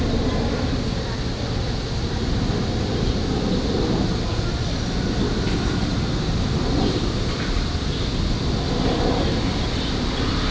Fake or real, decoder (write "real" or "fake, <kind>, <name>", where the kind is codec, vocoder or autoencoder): real